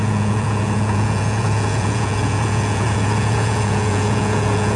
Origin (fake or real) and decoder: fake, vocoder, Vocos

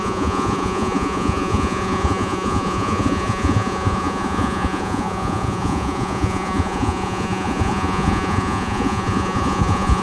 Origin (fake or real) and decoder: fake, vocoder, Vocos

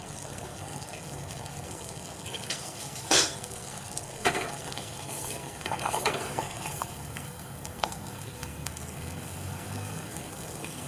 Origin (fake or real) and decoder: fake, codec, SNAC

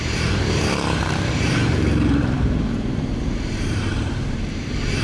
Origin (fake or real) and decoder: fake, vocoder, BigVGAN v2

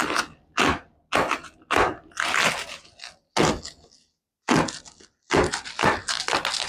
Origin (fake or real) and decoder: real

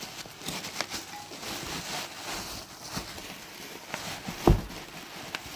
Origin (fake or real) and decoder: real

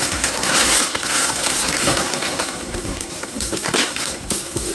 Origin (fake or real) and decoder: fake, codec, SNAC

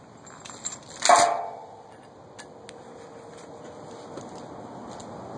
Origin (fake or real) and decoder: real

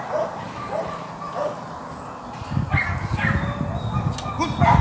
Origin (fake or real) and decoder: real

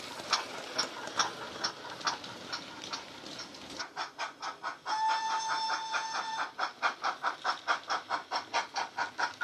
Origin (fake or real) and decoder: real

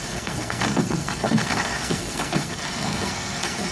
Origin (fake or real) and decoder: fake, codec, SNAC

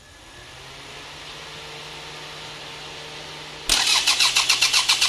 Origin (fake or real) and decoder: real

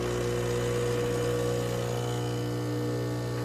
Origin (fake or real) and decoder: real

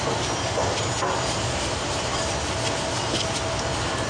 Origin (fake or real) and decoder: real